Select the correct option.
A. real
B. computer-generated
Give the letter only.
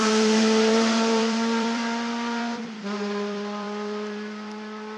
B